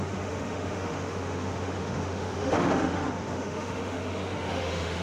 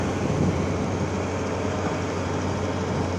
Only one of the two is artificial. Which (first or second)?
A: first